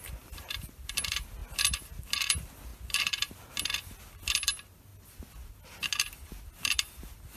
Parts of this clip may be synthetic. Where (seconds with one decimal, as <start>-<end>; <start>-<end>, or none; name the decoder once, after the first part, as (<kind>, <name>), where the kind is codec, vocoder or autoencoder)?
none